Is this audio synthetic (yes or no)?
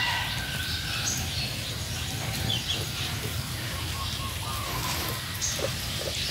no